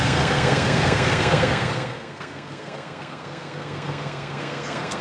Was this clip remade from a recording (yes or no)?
yes